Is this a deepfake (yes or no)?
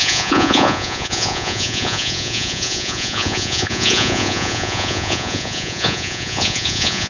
yes